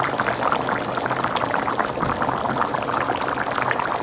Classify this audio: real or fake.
real